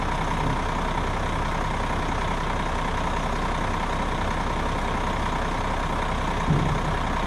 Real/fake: real